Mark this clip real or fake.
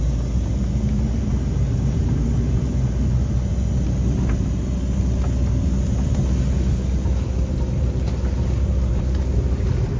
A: real